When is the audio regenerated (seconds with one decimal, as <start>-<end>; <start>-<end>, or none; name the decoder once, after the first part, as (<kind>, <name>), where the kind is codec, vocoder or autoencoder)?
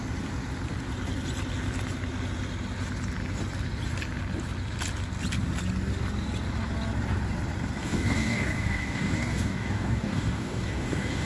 7.8-11.3 (codec, DAC)